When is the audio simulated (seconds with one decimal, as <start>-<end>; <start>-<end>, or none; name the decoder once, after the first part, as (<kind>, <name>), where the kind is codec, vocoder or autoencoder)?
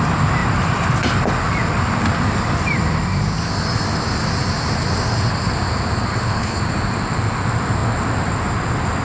6.1-6.6 (codec, HILCodec)